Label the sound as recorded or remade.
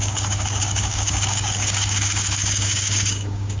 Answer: remade